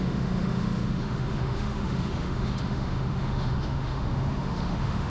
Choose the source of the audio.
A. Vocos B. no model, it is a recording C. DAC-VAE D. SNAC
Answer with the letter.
C